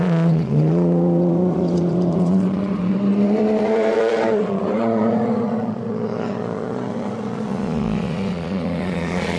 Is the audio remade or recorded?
remade